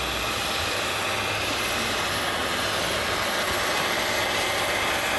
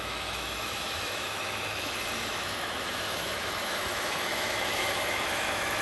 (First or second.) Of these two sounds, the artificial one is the second